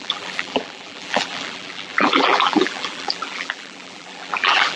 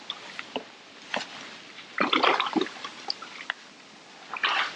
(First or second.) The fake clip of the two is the first